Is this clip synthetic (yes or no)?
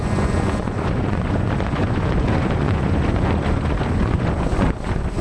yes